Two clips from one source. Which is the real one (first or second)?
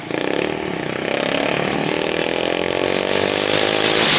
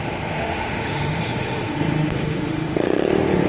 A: first